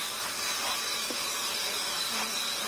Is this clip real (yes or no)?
no